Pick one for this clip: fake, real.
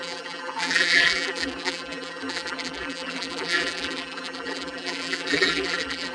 fake